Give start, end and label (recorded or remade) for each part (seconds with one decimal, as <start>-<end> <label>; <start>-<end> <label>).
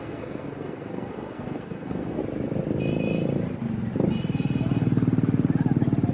0.0-2.2 remade; 2.2-6.1 recorded